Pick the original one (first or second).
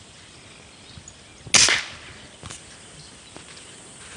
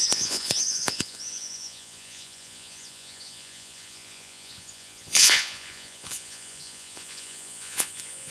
first